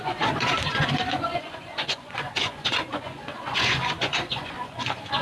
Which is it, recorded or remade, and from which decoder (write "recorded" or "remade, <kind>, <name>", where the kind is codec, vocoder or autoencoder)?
remade, vocoder, Vocos